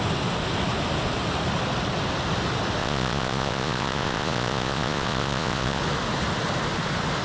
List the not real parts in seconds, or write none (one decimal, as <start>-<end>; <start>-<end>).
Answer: 2.8-5.8